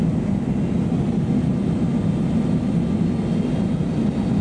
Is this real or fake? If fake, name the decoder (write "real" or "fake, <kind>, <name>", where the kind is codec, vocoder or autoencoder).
real